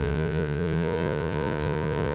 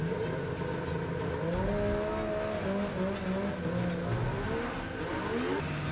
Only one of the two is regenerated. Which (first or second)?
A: first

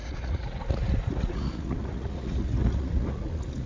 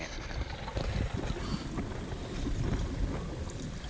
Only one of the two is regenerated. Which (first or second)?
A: first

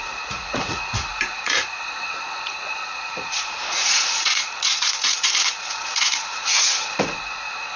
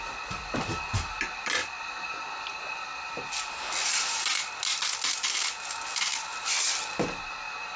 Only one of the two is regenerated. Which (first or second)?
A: first